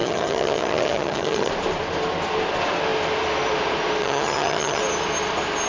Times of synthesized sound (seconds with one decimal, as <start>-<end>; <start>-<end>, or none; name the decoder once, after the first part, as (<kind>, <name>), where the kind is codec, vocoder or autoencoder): 0.0-1.5 (vocoder, HiFi-GAN); 4.0-4.8